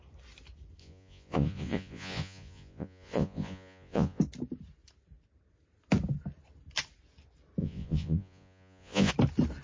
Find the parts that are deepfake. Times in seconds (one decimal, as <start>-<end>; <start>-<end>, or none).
0.8-4.2; 7.6-9.1

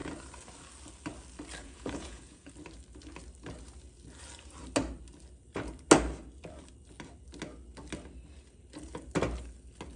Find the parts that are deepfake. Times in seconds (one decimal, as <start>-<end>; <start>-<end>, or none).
1.6-2.5

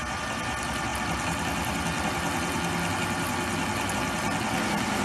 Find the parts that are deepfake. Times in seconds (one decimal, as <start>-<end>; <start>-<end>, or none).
none

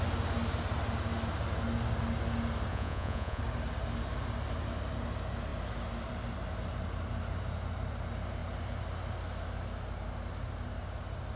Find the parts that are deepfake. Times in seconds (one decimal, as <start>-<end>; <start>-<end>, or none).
2.7-3.4

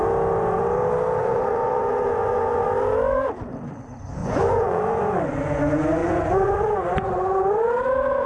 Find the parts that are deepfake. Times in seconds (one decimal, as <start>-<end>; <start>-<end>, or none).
1.2-2.7; 4.2-5.2; 6.0-7.8